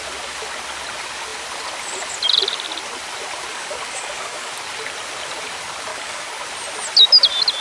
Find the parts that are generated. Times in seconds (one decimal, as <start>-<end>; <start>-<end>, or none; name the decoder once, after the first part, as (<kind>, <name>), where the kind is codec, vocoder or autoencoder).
3.5-4.5 (codec, DAC); 5.9-6.4

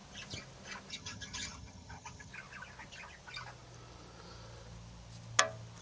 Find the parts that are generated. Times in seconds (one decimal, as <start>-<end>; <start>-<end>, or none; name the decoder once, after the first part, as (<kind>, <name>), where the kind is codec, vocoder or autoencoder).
0.9-2.3 (vocoder, HiFi-GAN)

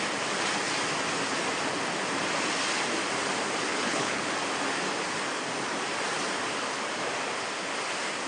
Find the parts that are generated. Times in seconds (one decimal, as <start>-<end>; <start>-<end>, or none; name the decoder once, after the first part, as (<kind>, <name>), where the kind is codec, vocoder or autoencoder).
3.7-4.2 (codec, HILCodec)

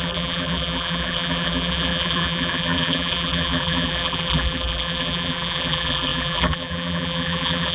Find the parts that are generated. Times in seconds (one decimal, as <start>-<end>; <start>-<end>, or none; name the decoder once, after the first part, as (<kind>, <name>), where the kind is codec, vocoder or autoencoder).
0.0-7.7 (vocoder, BigVGAN v2)

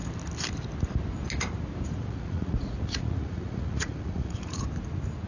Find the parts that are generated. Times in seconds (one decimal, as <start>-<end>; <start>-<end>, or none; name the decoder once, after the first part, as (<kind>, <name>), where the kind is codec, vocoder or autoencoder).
2.0-4.6 (vocoder, Vocos)